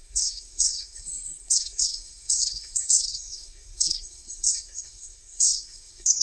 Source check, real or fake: fake